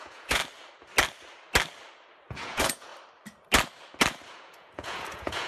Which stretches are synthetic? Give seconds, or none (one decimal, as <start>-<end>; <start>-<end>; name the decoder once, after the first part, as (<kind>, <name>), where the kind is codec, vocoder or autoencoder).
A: 0.0-0.4 (vocoder, Vocos); 2.3-2.9; 4.3-5.5